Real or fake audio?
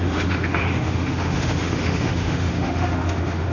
fake